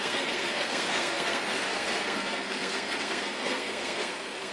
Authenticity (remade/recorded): remade